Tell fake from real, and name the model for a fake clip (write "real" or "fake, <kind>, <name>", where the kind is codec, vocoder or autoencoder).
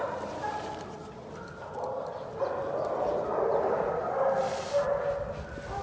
real